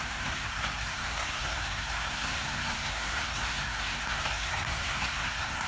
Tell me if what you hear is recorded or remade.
remade